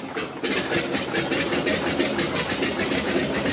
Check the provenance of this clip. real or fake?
fake